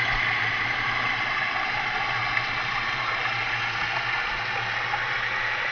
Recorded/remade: recorded